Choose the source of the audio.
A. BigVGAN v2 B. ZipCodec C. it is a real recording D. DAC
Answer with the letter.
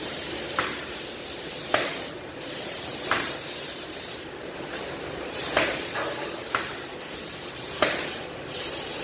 A